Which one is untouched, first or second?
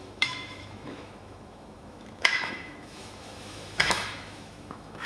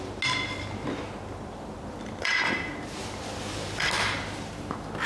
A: second